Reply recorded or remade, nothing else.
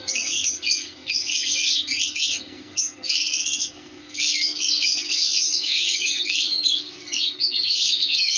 remade